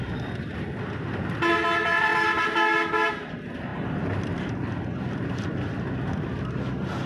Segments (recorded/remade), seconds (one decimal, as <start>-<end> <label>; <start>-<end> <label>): 0.0-3.7 recorded; 3.7-5.7 remade; 5.7-7.1 recorded